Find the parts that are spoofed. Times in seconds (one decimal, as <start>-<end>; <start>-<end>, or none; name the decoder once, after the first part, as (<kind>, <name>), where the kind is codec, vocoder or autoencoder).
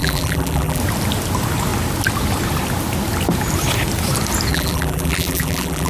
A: 0.0-0.8 (vocoder, BigVGAN v2); 4.5-5.9